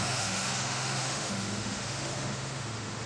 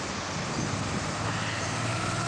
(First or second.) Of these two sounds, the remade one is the first